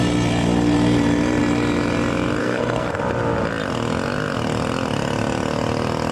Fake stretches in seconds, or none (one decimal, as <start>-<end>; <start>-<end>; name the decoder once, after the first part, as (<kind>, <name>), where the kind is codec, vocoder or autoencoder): 2.4-3.0 (codec, SNAC)